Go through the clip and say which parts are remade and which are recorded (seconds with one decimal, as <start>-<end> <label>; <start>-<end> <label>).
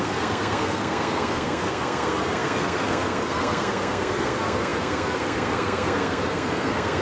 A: 0.0-7.0 remade